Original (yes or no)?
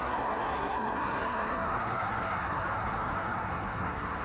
no